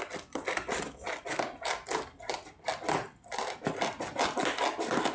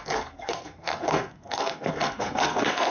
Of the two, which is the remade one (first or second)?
second